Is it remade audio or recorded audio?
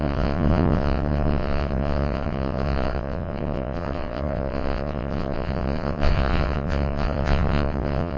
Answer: remade